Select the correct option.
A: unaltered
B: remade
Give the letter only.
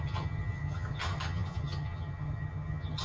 B